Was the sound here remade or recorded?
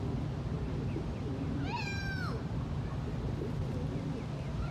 recorded